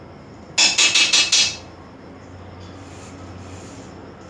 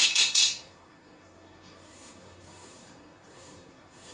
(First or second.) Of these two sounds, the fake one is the second